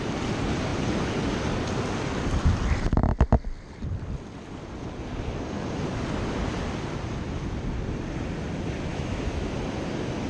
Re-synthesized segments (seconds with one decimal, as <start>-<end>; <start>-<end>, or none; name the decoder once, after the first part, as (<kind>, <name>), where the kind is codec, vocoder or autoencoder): 8.9-9.5 (autoencoder, DAC-VAE)